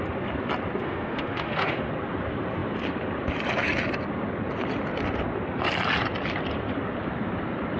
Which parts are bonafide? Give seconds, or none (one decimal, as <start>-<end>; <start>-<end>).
0.0-0.8; 1.9-7.8